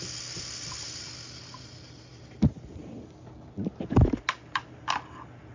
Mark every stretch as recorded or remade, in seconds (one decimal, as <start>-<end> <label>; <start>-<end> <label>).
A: 0.0-5.5 recorded